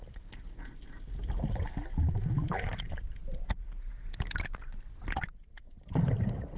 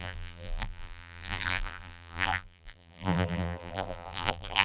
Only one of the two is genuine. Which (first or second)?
first